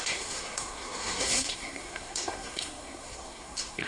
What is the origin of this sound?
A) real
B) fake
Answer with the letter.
B